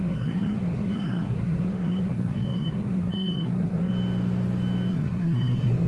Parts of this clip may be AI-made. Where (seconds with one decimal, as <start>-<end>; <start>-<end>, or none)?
0.0-3.9; 4.9-5.9